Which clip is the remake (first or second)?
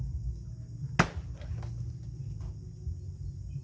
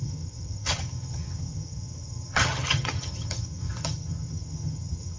second